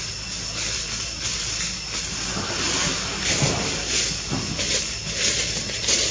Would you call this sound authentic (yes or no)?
yes